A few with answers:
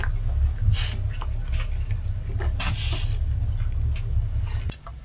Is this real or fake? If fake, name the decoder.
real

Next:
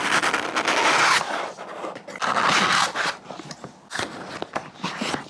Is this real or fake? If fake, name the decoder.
real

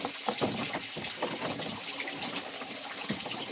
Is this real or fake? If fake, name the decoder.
real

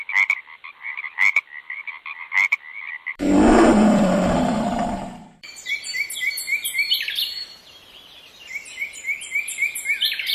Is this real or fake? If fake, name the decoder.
fake, vocoder, BigVGAN v2